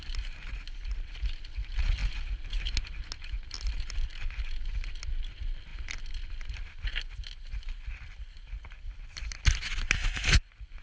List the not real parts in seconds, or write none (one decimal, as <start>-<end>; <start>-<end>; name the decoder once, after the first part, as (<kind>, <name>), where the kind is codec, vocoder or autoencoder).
none